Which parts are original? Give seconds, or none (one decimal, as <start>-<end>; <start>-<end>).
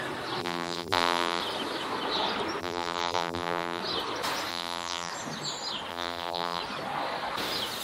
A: 0.0-0.4; 1.4-2.6; 3.8-4.5; 5.1-5.9; 6.6-7.8